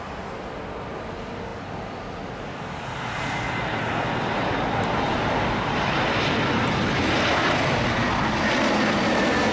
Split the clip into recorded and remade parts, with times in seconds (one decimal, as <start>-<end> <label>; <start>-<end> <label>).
0.0-9.5 recorded